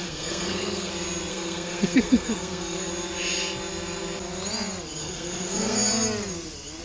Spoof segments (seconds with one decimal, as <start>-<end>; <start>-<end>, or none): 0.0-0.9; 1.3-2.9; 5.0-5.9